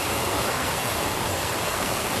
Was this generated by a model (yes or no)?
yes